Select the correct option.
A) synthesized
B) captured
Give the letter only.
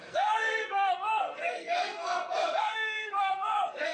A